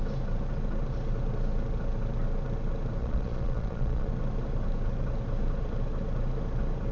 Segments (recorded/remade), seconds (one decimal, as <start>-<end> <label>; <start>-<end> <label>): 0.0-3.0 recorded; 3.0-4.1 remade; 4.1-6.9 recorded